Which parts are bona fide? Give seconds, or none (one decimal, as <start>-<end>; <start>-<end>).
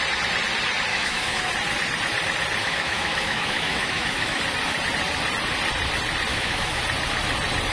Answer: 0.0-0.9; 1.5-2.6; 4.4-6.3; 6.8-7.7